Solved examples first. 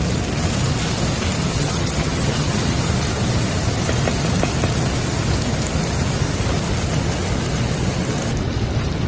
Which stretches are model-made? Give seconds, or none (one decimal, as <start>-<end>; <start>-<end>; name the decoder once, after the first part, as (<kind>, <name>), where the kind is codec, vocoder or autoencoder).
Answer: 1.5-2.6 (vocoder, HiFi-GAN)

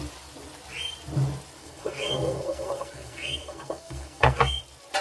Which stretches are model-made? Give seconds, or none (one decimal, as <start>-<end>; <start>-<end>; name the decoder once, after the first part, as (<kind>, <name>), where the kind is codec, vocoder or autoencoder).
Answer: 1.6-4.6 (codec, SNAC)

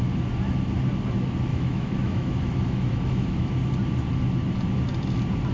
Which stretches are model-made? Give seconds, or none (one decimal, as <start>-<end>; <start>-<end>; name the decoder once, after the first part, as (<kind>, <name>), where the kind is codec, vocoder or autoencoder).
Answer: 1.5-3.5 (autoencoder, DAC-VAE)